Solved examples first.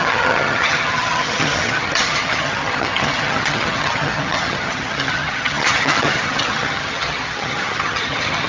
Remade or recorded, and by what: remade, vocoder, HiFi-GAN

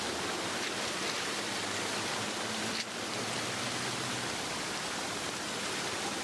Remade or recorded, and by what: remade, vocoder, BigVGAN v2